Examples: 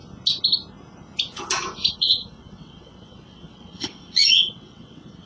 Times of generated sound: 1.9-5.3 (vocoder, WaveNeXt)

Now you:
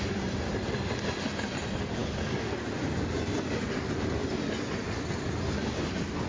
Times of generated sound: none

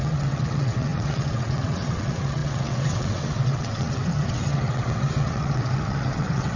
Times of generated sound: 0.0-6.6 (vocoder, WaveNeXt)

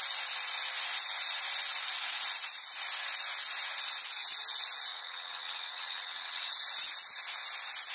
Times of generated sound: 4.9-6.5 (vocoder, WaveNeXt)